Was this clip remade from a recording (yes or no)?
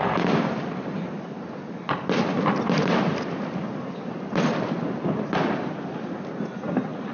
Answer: no